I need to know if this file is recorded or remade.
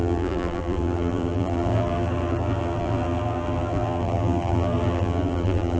remade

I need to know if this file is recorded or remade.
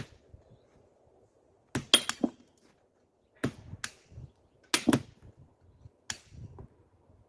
recorded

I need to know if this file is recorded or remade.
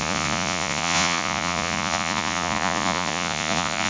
remade